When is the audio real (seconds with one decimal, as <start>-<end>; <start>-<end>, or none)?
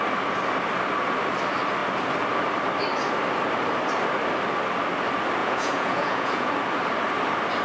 0.0-5.4; 6.5-7.6